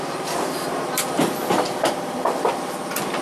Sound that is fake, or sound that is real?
real